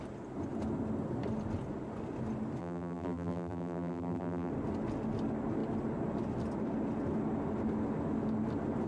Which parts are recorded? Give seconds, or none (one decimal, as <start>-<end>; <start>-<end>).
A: 0.0-2.6; 4.5-8.9